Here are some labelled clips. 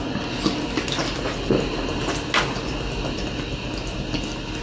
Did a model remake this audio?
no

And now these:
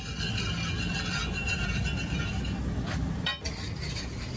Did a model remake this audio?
no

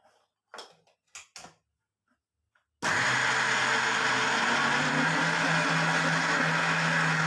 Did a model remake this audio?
no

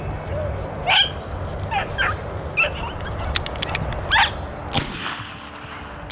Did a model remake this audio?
no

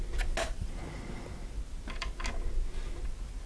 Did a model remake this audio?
no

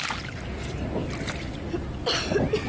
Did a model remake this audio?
no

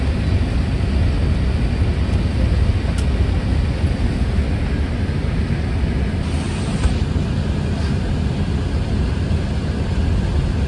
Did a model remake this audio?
no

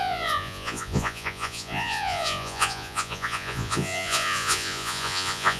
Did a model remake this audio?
yes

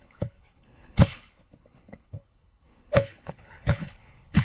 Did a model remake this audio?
yes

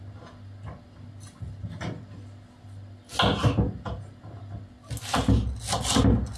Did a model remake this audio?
no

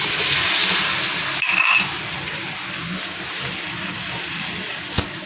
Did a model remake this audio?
no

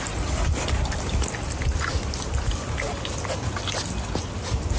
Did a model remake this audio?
no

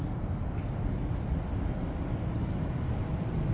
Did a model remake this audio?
no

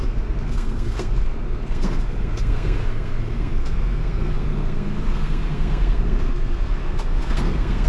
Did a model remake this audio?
yes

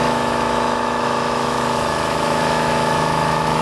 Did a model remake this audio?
yes